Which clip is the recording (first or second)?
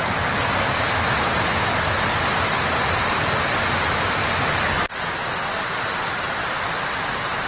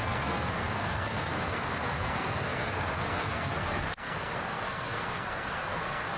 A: first